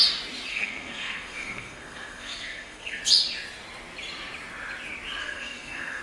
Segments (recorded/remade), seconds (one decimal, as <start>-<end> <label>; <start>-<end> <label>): 0.0-0.5 recorded; 0.5-3.0 remade; 3.0-5.2 recorded; 5.2-6.0 remade